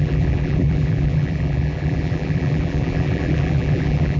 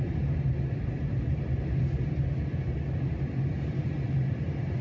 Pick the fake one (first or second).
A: first